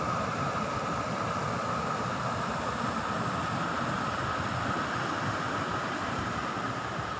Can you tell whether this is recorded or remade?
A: recorded